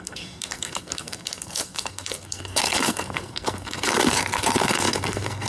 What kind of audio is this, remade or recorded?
remade